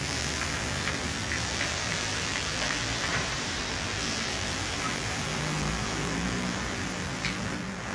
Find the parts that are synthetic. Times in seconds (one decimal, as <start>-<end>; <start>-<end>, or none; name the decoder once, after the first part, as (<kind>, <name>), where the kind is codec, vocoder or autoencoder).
0.0-3.1 (vocoder, BigVGAN v2); 3.6-7.9